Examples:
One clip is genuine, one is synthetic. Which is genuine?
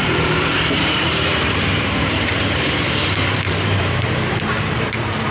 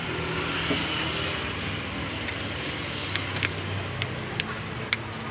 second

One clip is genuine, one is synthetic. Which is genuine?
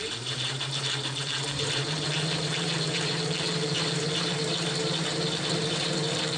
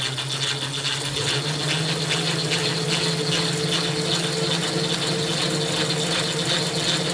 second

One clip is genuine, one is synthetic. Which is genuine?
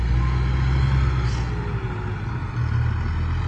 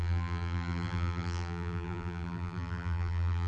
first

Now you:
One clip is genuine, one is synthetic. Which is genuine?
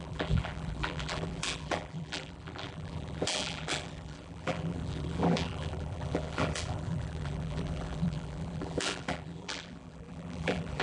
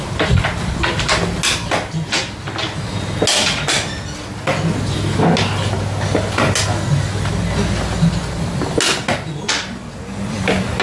second